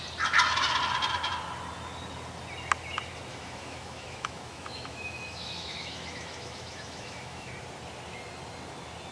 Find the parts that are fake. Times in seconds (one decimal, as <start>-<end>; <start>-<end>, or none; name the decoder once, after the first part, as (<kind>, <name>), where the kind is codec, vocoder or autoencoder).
3.3-7.5 (autoencoder, DAC-VAE)